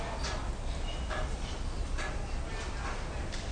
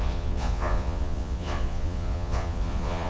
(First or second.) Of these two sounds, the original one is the first